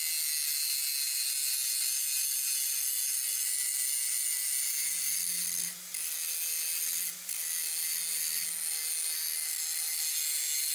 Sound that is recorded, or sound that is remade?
recorded